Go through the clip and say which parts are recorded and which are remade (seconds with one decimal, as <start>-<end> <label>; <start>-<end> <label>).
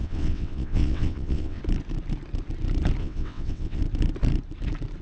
0.0-1.6 remade; 1.6-3.0 recorded; 3.0-3.8 remade; 3.8-5.0 recorded